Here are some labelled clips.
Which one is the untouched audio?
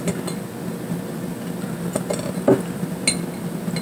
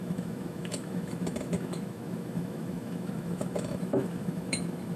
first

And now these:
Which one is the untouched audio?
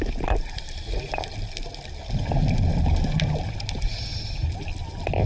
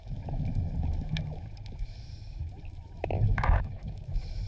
first